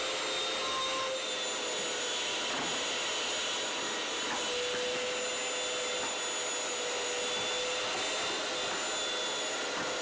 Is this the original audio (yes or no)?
yes